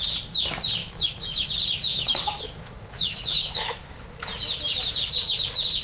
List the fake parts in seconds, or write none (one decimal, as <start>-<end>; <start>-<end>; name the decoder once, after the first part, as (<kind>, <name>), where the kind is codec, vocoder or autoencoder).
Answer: 0.8-1.5 (autoencoder, DAC-VAE); 1.9-4.1